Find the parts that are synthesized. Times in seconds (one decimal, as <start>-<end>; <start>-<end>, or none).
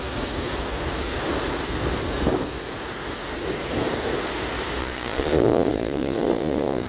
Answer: 4.8-6.9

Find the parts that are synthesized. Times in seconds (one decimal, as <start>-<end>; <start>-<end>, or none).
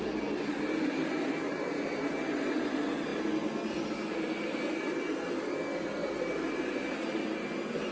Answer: none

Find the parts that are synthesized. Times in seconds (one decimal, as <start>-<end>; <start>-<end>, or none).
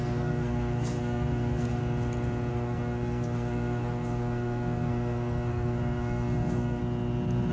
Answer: 0.0-1.8; 2.5-6.8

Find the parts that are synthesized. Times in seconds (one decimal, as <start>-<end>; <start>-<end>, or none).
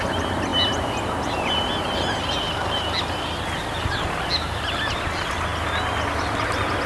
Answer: none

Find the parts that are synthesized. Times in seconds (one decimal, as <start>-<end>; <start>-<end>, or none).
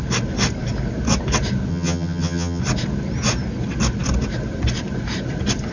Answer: 1.7-2.6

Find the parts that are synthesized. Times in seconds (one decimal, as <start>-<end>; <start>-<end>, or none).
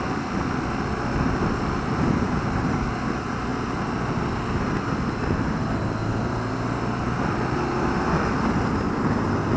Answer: none